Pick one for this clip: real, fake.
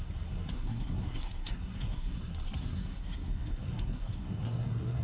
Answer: fake